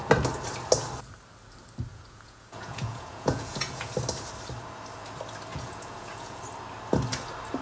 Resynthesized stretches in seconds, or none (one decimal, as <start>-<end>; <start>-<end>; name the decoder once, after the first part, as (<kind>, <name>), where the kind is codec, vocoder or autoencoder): 1.9-3.9 (vocoder, Vocos); 5.5-6.4